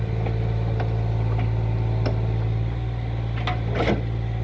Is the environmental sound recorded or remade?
recorded